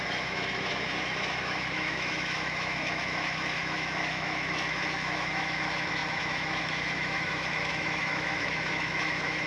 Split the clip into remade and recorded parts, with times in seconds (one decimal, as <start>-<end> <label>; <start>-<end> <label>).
0.0-9.5 remade